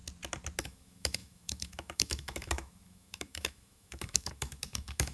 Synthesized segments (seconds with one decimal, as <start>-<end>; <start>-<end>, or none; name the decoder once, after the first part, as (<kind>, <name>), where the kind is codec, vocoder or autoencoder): 0.6-5.1 (autoencoder, DAC-VAE)